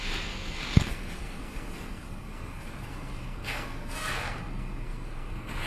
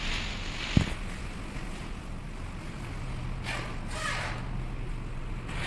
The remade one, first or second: first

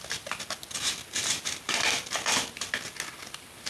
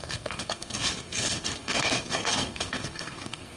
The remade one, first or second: second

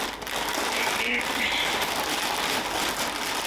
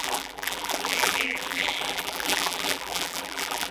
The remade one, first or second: second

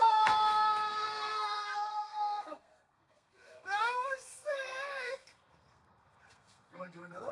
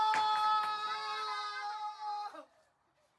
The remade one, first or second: first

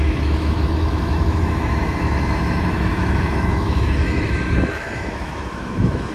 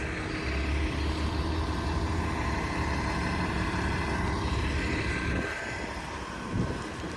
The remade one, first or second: first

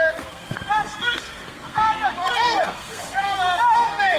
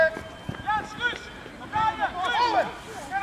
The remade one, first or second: first